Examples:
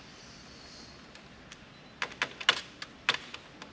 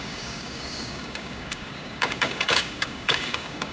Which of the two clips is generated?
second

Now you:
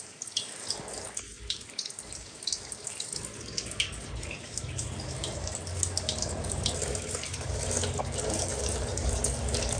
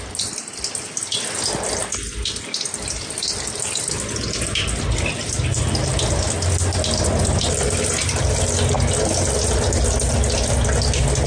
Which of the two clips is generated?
first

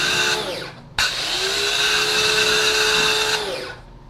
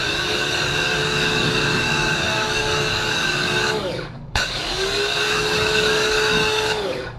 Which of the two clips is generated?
second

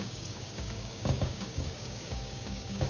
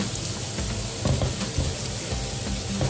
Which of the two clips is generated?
first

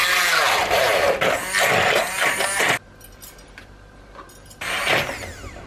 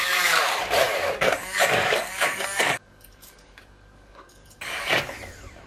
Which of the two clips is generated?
second